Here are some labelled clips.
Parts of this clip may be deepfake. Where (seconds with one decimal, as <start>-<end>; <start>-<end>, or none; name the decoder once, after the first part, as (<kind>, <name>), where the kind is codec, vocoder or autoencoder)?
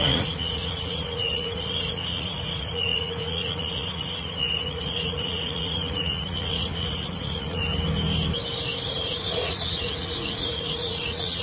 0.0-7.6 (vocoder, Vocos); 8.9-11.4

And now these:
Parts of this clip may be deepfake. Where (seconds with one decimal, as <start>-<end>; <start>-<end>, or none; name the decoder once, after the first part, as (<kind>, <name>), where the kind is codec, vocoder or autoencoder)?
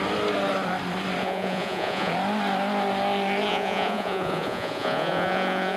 1.2-2.1 (vocoder, Vocos); 3.5-5.8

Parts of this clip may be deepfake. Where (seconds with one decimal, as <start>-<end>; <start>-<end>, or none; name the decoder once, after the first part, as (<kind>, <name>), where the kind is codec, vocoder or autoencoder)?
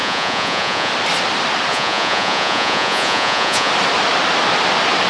0.0-0.9 (vocoder, Vocos); 1.7-3.7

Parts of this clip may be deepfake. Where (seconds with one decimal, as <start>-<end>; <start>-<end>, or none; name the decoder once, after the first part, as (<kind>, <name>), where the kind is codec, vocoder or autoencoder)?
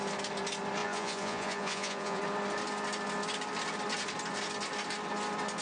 0.8-2.2 (vocoder, Vocos)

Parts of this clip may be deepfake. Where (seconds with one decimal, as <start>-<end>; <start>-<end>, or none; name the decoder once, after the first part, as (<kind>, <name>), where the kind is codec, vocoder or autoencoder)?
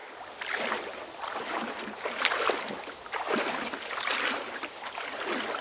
none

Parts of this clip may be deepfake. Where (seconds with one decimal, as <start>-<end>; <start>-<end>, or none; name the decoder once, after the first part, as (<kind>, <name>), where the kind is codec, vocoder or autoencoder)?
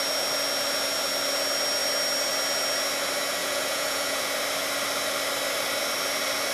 3.4-4.2 (vocoder, Vocos)